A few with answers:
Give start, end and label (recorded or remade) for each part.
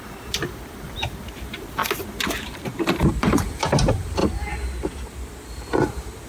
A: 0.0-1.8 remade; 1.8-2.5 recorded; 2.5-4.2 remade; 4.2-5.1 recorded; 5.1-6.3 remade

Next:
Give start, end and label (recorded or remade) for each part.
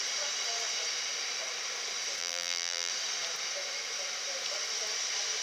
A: 0.0-2.2 recorded; 2.2-2.9 remade; 2.9-5.4 recorded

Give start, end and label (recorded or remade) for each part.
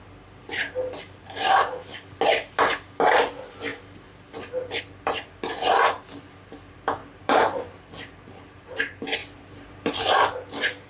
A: 0.0-7.0 recorded; 7.0-7.8 remade; 7.8-10.9 recorded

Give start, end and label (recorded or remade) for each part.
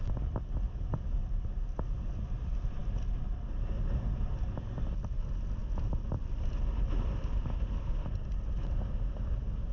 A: 0.0-1.2 recorded; 1.2-1.8 remade; 1.8-9.7 recorded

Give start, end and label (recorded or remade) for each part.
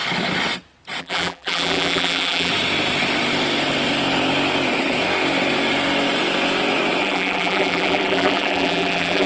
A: 0.0-1.0 recorded; 1.0-2.5 remade; 2.5-7.0 recorded; 7.0-9.3 remade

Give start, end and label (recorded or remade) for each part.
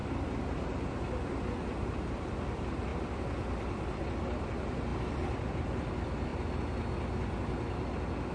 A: 0.0-6.3 remade; 6.3-8.3 recorded